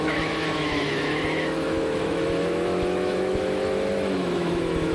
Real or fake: fake